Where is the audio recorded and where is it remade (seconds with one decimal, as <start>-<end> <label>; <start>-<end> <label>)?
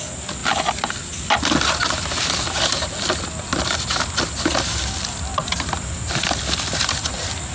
0.0-0.4 recorded; 0.4-1.4 remade; 1.4-5.3 recorded; 5.3-5.9 remade; 5.9-7.5 recorded